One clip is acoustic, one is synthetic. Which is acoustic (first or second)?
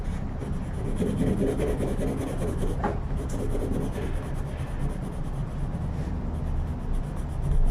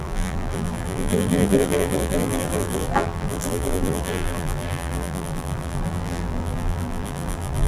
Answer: first